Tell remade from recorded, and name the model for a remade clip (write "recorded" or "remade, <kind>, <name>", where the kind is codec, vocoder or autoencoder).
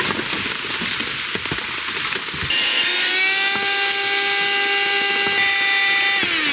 recorded